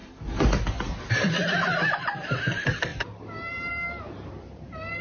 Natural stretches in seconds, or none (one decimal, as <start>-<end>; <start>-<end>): none